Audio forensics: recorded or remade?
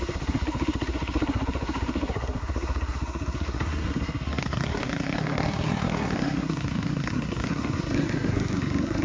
remade